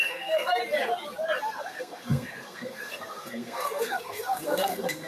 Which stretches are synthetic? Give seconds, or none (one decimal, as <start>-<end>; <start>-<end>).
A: 0.0-0.6; 1.6-5.1